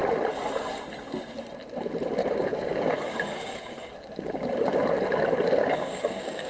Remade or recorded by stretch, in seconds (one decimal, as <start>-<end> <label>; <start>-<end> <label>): 0.0-2.2 recorded; 2.2-3.9 remade; 3.9-5.6 recorded; 5.6-6.5 remade